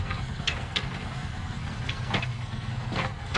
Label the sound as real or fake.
fake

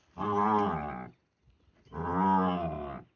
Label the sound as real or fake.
real